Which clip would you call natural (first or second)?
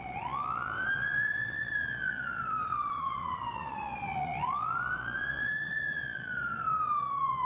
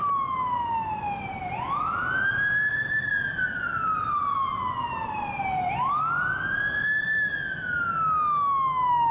second